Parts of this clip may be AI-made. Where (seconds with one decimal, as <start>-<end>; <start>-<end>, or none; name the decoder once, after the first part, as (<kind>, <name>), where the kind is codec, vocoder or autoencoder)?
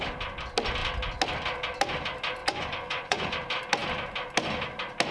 2.4-3.3 (vocoder, Vocos)